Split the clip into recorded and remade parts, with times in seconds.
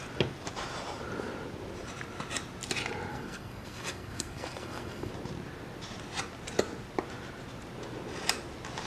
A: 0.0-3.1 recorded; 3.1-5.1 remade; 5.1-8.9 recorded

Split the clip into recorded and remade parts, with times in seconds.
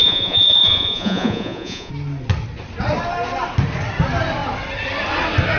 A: 0.0-1.9 remade; 1.9-5.6 recorded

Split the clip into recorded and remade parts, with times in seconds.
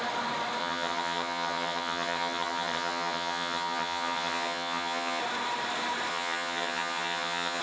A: 0.0-0.6 recorded; 0.6-5.2 remade; 5.2-6.1 recorded; 6.1-7.6 remade